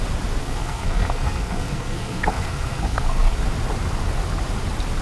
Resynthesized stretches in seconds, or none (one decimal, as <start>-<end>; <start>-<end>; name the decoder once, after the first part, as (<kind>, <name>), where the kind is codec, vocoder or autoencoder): 0.4-3.4 (codec, SNAC)